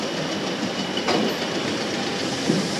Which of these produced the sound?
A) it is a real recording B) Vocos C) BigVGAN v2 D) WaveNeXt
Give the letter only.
C